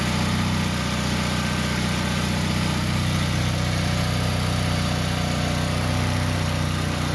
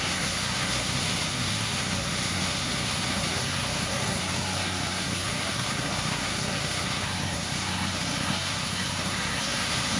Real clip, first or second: first